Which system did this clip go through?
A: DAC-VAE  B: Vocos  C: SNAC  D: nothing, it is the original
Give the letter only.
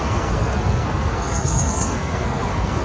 C